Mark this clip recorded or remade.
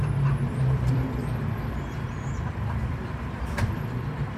remade